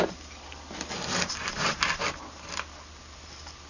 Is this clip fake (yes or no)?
no